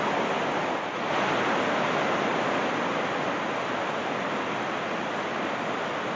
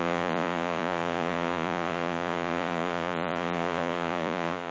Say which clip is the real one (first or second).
first